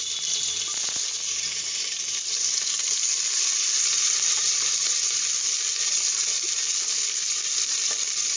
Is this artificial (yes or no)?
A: no